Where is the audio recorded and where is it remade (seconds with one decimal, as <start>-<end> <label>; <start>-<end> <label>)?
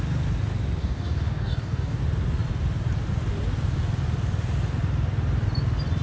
0.0-0.8 recorded; 0.8-2.0 remade; 2.0-6.0 recorded